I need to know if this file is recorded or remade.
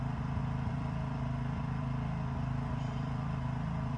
remade